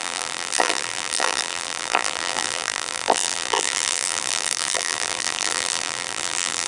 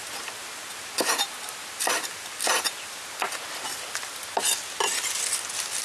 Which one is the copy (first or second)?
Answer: first